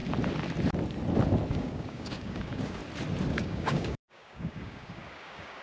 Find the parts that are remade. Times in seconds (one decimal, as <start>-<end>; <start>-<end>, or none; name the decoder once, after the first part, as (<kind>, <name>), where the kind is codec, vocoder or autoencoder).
1.5-2.8 (codec, DAC); 3.3-5.6